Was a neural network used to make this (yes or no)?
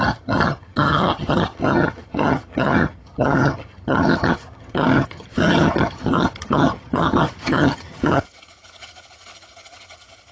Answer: yes